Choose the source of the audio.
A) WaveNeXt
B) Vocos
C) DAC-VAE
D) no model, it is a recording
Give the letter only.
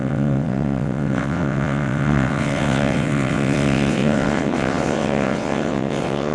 A